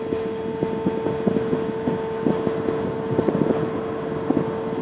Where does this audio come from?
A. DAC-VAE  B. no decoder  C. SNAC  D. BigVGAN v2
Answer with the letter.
B